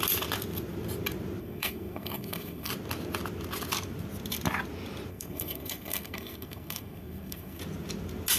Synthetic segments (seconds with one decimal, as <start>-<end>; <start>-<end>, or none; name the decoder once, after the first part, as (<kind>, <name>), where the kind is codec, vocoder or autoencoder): 1.4-2.7 (codec, SNAC); 5.1-7.6